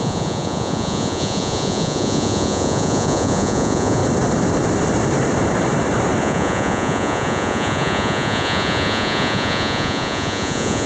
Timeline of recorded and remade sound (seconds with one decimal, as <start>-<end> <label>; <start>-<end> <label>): 0.0-4.0 remade; 4.0-6.2 recorded; 6.2-10.9 remade